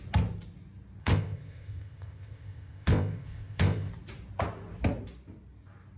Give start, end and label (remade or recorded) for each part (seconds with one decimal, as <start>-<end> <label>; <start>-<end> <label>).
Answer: 0.0-1.0 recorded; 1.0-3.9 remade; 3.9-6.0 recorded